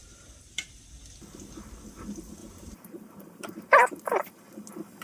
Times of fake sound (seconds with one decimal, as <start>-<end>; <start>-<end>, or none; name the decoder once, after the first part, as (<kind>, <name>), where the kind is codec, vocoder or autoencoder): 2.4-4.4 (vocoder, BigVGAN v2)

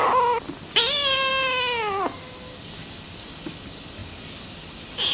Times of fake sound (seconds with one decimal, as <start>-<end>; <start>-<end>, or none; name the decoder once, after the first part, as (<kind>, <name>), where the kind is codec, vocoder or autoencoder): 0.7-1.3 (vocoder, BigVGAN v2); 2.7-4.0

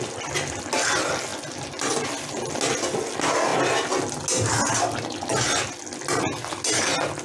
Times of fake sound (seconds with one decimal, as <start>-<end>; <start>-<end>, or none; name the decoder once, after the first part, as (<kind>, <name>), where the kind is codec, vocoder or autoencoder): none

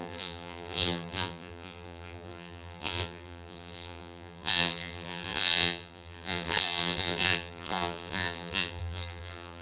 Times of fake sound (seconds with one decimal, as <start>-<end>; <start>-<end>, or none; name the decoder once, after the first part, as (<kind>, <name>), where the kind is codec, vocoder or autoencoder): 0.0-9.6 (vocoder, BigVGAN v2)

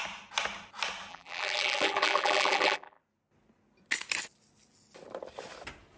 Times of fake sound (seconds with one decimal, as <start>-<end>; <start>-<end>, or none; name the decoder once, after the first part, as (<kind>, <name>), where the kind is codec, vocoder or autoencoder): 1.1-3.0 (vocoder, BigVGAN v2)

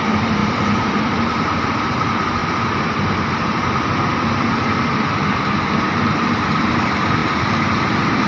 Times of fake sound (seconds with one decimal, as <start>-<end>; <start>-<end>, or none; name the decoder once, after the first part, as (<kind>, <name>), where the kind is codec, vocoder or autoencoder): 0.0-2.4 (vocoder, BigVGAN v2); 5.5-8.3

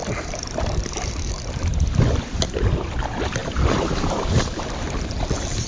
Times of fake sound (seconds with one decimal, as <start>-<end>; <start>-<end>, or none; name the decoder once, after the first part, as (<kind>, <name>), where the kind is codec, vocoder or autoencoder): 0.0-5.7 (vocoder, BigVGAN v2)